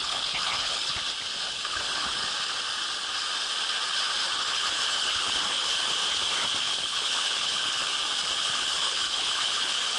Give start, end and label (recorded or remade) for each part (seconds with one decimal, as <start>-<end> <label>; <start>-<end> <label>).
0.0-0.9 remade; 0.9-1.5 recorded; 1.5-2.2 remade; 2.2-4.3 recorded; 4.3-6.0 remade; 6.0-6.6 recorded; 6.6-7.9 remade; 7.9-8.4 recorded; 8.4-10.0 remade

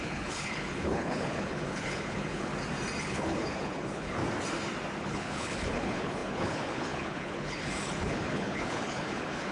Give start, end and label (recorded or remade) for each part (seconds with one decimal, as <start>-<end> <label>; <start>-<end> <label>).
0.0-2.5 remade; 2.5-3.0 recorded; 3.0-4.2 remade; 4.2-5.0 recorded; 5.0-9.5 remade

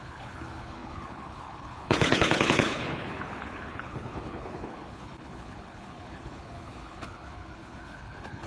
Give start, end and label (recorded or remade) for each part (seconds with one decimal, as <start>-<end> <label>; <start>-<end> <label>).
0.0-8.5 remade

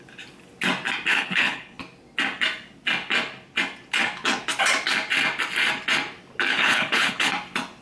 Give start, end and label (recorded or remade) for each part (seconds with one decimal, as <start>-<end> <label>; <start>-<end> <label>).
0.0-1.1 recorded; 1.1-1.8 remade; 1.8-6.5 recorded; 6.5-7.3 remade; 7.3-7.8 recorded